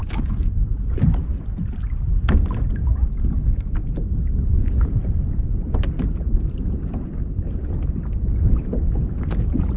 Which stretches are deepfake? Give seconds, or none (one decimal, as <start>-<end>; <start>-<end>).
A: 0.0-0.7; 2.8-3.8